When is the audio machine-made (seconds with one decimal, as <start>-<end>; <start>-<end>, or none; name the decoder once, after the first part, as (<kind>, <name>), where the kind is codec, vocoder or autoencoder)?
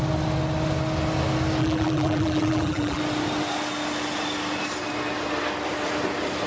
1.6-3.0 (vocoder, BigVGAN v2)